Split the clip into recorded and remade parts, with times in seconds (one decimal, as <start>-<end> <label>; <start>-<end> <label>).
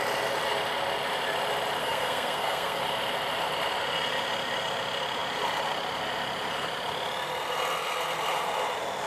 0.0-1.8 recorded; 1.8-2.8 remade; 2.8-9.1 recorded